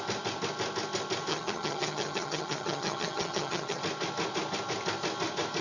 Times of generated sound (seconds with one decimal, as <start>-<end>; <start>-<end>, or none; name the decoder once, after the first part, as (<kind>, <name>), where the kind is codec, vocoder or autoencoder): 1.3-3.8 (vocoder, HiFi-GAN)